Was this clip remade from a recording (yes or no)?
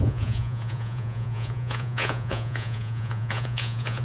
yes